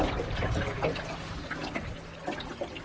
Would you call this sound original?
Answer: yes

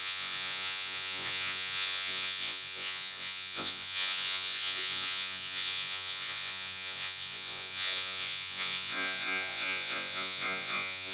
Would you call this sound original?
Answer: no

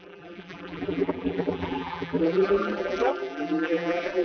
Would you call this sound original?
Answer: no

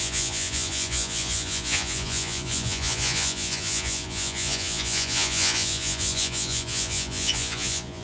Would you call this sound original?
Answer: no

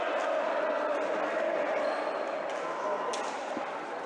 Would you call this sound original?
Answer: yes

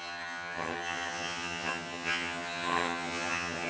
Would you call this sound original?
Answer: no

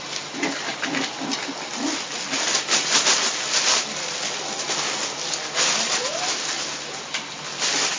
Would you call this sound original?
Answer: yes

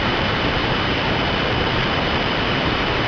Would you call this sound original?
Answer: no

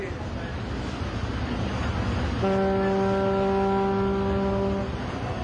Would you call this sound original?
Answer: yes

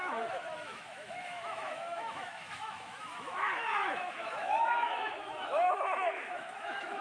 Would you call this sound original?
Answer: no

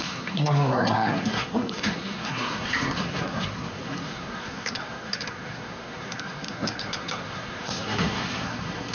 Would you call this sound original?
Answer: no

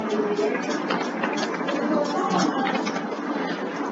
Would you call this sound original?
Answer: yes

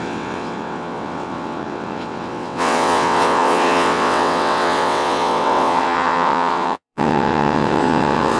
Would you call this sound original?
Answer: no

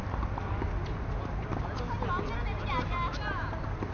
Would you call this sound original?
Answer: yes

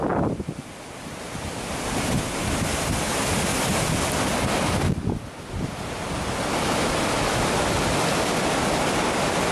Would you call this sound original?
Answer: yes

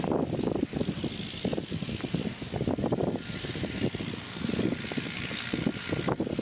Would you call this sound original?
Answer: yes